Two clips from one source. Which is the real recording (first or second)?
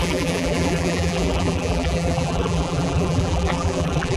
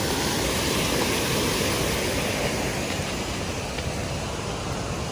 second